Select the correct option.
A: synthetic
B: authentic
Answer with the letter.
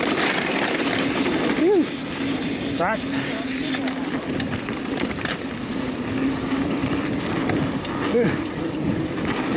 A